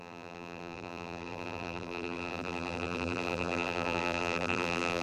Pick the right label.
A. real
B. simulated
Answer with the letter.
B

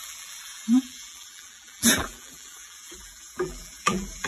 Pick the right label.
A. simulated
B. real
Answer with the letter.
A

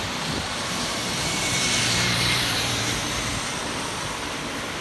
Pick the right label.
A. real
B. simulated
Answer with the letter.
B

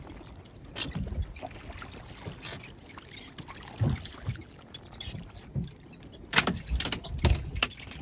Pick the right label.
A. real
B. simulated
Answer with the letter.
A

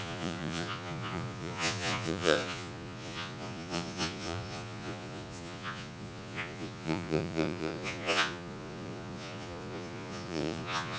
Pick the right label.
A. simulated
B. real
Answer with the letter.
A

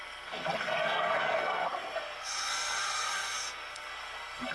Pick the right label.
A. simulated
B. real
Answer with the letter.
A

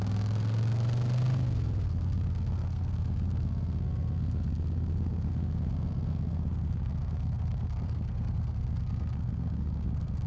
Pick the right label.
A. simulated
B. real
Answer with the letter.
A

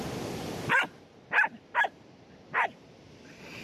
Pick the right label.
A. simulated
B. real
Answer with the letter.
B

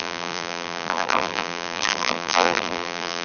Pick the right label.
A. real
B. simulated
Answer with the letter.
B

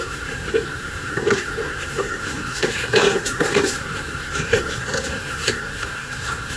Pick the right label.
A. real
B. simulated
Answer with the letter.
B